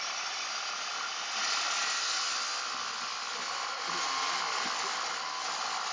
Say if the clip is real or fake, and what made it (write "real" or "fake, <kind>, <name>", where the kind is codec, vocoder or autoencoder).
real